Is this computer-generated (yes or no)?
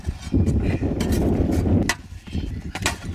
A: no